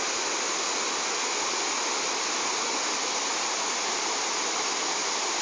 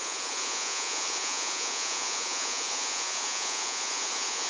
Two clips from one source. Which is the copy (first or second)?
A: second